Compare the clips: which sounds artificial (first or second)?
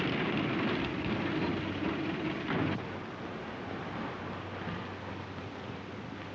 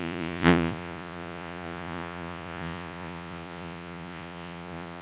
second